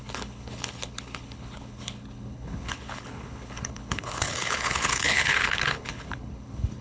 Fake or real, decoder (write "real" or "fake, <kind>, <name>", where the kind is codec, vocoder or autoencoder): fake, codec, HILCodec